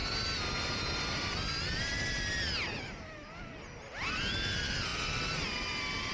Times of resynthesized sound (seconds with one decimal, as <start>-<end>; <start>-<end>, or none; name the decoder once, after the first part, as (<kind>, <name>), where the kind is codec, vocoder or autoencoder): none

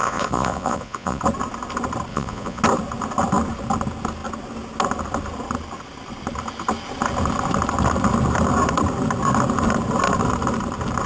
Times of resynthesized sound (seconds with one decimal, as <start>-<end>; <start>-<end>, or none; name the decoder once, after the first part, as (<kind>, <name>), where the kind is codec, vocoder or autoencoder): 0.0-1.2 (vocoder, Vocos); 2.1-2.6

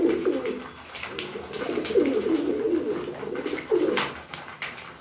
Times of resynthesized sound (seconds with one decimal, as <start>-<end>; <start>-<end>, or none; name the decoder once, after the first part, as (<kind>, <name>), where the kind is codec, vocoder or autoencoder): none

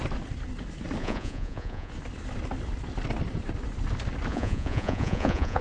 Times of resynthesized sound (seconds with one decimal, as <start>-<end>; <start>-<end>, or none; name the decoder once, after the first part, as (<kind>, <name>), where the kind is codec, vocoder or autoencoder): 1.0-1.9 (vocoder, Vocos); 4.3-5.6